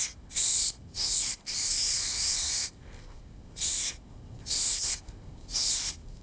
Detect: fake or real fake